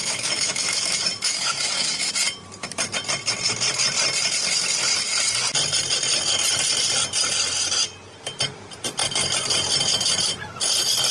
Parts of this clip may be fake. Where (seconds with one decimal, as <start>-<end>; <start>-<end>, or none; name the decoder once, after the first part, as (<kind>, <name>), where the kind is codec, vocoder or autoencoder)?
0.0-2.1 (autoencoder, DAC-VAE)

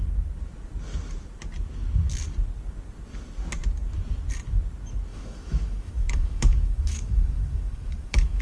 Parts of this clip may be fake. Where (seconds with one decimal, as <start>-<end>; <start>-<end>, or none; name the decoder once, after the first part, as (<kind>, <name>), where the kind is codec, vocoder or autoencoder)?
5.1-8.4 (autoencoder, DAC-VAE)

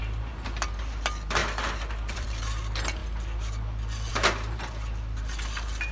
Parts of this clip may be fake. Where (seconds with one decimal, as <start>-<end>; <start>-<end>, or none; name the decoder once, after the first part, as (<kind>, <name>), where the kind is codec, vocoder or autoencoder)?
1.4-2.4 (vocoder, BigVGAN v2)

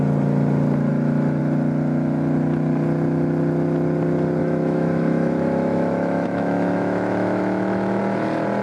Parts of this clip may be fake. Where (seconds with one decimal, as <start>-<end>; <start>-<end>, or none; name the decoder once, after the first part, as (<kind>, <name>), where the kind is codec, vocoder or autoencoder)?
0.9-1.4 (autoencoder, DAC-VAE); 4.4-8.0

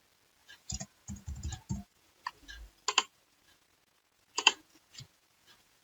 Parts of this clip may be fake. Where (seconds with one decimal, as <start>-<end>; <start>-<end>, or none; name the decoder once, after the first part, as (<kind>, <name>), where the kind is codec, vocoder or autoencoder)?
0.4-2.6 (vocoder, Vocos); 3.1-5.8

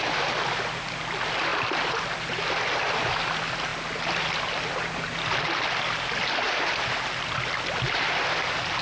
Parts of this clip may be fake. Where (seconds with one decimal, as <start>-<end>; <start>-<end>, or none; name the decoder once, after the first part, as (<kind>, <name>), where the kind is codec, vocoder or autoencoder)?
none

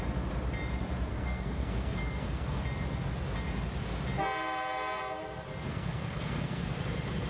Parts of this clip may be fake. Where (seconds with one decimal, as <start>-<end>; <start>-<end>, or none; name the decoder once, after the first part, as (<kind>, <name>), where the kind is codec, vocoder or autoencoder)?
1.1-2.6 (codec, SNAC); 5.7-6.7